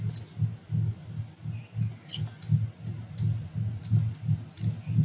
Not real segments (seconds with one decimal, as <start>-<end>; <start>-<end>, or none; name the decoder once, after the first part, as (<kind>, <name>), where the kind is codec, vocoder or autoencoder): none